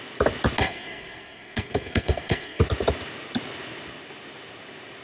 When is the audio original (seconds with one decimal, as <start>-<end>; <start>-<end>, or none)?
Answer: 0.0-0.6; 2.6-5.0